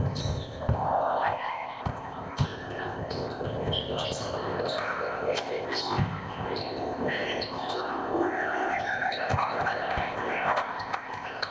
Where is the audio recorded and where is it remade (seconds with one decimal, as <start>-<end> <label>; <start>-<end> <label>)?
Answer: 0.0-11.5 remade

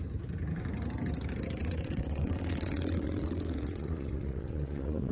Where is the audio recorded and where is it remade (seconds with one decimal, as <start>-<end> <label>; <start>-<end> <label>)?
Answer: 0.0-1.6 recorded; 1.6-5.1 remade

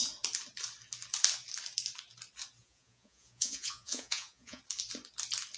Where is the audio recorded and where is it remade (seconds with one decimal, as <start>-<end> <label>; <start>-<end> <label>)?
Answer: 0.0-2.6 recorded; 2.6-4.6 remade; 4.6-5.6 recorded